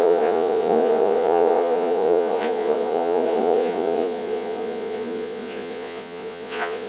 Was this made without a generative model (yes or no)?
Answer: no